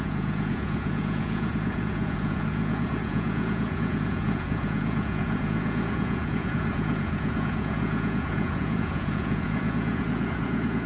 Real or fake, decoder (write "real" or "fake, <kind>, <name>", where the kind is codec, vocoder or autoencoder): fake, vocoder, Vocos